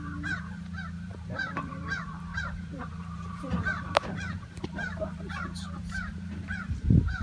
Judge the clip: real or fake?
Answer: fake